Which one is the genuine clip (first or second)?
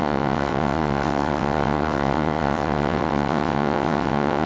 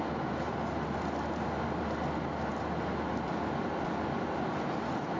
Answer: second